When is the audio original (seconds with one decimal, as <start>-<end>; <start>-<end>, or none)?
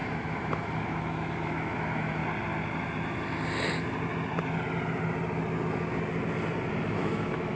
2.2-6.8